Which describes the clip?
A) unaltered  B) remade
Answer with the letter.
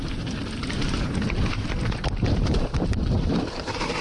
B